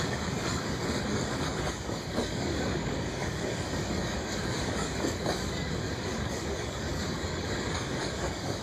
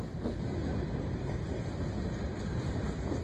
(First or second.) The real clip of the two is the second